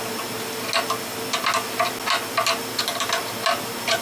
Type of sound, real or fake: real